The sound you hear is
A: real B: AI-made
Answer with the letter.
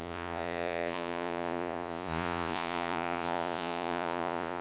B